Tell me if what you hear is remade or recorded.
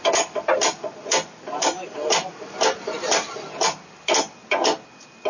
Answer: recorded